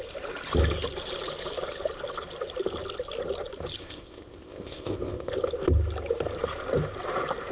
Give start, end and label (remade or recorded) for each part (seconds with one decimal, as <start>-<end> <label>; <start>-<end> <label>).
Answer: 0.0-3.8 recorded; 3.8-5.3 remade; 5.3-7.5 recorded